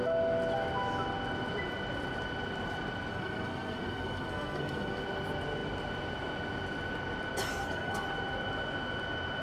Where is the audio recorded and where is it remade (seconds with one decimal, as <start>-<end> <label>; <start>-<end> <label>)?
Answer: 0.0-3.1 recorded; 3.1-5.0 remade; 5.0-7.5 recorded; 7.5-8.0 remade; 8.0-9.4 recorded

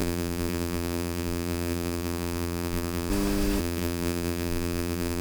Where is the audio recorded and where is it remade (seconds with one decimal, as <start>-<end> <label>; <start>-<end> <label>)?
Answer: 0.0-3.1 remade; 3.1-3.6 recorded; 3.6-5.2 remade